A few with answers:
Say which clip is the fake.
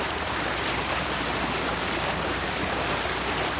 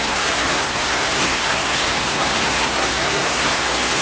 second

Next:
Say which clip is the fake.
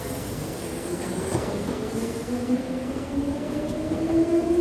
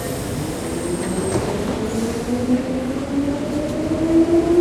first